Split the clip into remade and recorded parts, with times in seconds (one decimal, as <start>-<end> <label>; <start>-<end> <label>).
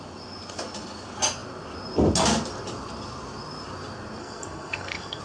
0.0-4.2 recorded; 4.2-5.2 remade